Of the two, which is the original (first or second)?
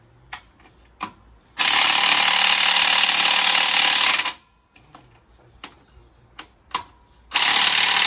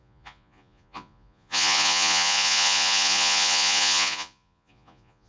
first